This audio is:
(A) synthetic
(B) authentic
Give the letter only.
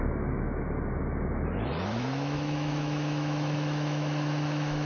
A